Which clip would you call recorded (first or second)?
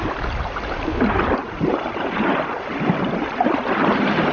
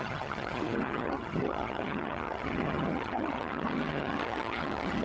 first